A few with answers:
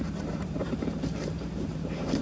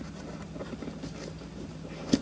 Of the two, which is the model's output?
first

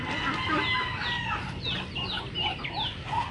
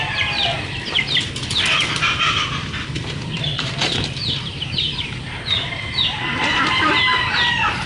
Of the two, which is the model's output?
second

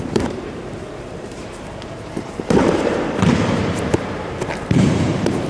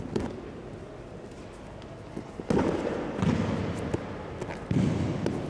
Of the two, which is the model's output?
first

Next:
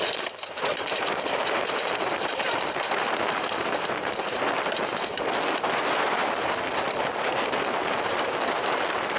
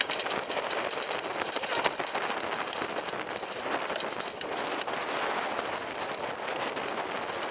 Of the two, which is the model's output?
first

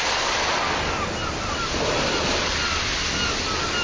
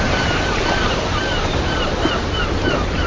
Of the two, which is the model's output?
second